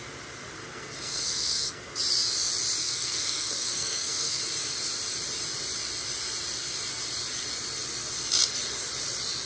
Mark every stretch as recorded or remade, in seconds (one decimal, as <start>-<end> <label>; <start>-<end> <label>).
0.0-0.6 recorded; 0.6-1.9 remade; 1.9-2.8 recorded; 2.8-4.4 remade; 4.4-9.5 recorded